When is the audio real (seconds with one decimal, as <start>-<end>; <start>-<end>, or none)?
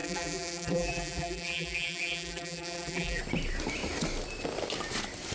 3.2-5.3